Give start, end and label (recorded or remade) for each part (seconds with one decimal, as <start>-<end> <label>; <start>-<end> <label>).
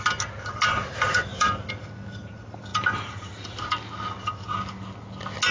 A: 0.0-0.7 recorded; 0.7-1.7 remade; 1.7-2.7 recorded; 2.7-3.6 remade; 3.6-5.5 recorded